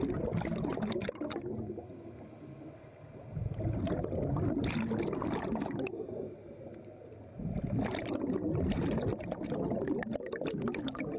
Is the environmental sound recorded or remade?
recorded